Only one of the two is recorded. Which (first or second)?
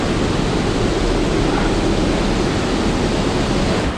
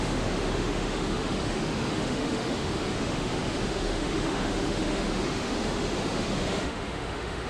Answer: first